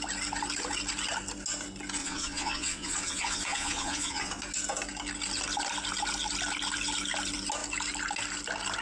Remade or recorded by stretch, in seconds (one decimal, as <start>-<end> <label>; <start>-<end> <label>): 0.0-2.0 recorded; 2.0-4.4 remade; 4.4-8.8 recorded